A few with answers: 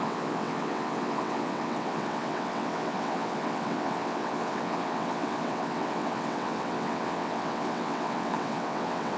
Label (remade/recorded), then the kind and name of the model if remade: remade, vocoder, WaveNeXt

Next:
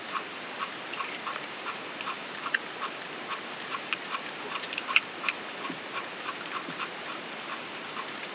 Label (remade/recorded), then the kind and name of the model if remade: remade, vocoder, BigVGAN v2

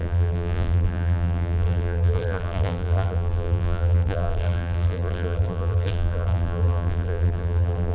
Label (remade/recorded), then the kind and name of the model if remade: remade, vocoder, BigVGAN v2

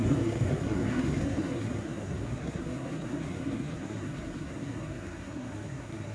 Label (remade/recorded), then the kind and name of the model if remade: remade, codec, SNAC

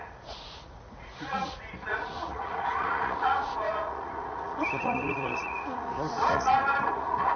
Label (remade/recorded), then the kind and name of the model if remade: remade, vocoder, Vocos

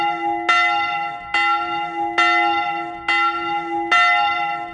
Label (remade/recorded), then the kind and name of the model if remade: recorded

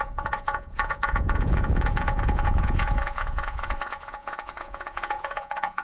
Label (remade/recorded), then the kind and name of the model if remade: remade, vocoder, Vocos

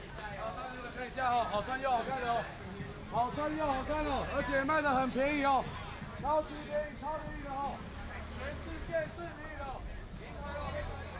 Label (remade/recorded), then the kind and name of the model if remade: recorded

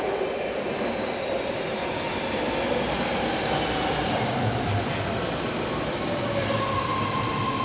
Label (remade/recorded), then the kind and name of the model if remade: recorded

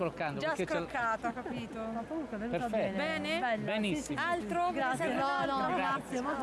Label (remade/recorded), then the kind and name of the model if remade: recorded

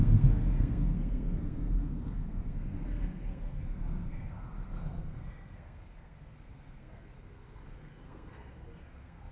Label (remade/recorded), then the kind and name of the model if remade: remade, codec, SNAC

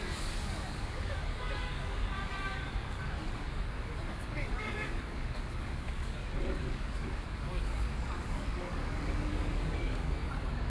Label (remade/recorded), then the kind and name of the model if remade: remade, codec, DAC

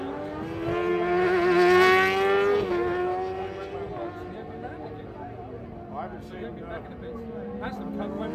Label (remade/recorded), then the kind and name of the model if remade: recorded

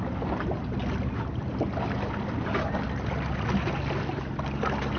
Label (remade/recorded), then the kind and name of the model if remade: recorded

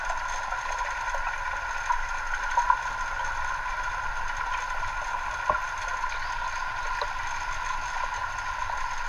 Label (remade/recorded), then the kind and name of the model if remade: recorded